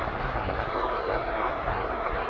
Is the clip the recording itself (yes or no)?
no